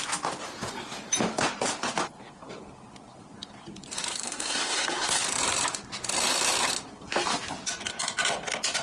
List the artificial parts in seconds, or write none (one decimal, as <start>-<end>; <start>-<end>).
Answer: 4.1-5.2